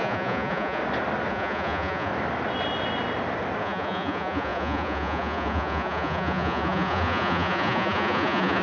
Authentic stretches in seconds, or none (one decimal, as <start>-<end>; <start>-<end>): 0.8-1.3; 2.1-3.6